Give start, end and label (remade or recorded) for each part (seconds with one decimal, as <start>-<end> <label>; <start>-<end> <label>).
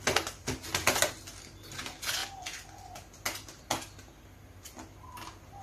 0.0-5.6 recorded